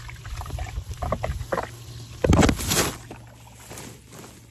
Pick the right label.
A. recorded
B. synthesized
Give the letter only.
A